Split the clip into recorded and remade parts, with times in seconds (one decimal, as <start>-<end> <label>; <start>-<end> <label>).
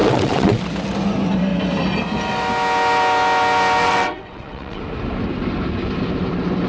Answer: 0.0-0.6 remade; 0.6-3.8 recorded; 3.8-4.8 remade; 4.8-6.7 recorded